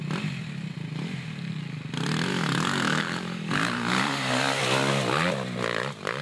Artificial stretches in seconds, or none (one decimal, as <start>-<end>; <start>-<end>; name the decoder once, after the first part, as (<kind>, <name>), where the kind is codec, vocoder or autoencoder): 2.3-4.6 (codec, DAC)

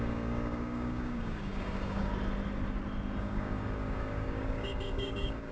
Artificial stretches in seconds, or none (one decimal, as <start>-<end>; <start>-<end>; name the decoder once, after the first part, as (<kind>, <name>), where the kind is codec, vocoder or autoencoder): 0.0-2.1 (codec, DAC); 3.2-5.5